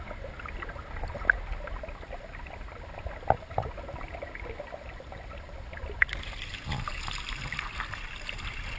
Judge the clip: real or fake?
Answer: real